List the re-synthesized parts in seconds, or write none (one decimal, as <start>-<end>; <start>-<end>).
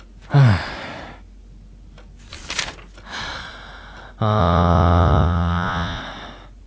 4.4-6.0